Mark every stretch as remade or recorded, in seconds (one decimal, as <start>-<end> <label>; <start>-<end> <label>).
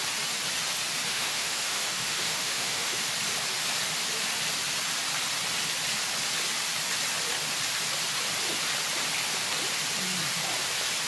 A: 0.0-1.1 recorded; 1.1-3.0 remade; 3.0-11.1 recorded